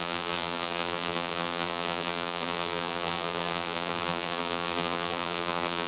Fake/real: fake